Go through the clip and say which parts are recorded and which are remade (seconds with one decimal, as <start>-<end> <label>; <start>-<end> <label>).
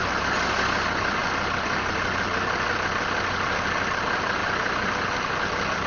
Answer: 0.0-5.9 recorded